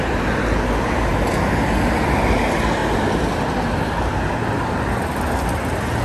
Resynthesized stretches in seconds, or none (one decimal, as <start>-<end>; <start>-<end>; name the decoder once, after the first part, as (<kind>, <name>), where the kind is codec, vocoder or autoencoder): none

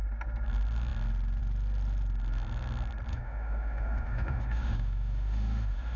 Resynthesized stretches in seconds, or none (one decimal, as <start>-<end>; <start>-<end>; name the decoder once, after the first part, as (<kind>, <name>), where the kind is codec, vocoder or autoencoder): 3.1-6.0 (autoencoder, DAC-VAE)

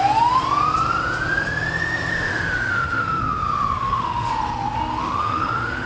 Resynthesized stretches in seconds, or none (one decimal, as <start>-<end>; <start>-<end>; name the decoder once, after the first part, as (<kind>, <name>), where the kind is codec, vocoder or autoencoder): 2.1-3.2 (autoencoder, DAC-VAE); 3.8-4.3; 5.0-5.9

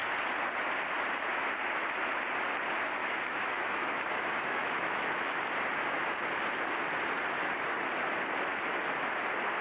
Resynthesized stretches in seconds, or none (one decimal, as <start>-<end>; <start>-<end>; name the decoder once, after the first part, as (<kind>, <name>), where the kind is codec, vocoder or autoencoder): 3.0-5.4 (autoencoder, DAC-VAE)

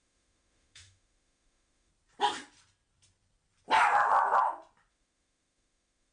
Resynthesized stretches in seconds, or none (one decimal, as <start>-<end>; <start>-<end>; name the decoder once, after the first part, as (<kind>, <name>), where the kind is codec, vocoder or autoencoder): 0.0-1.9 (autoencoder, DAC-VAE); 4.9-6.1

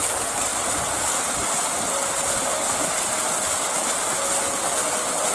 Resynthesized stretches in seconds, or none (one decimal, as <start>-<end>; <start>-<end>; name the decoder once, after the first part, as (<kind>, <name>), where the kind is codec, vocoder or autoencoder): none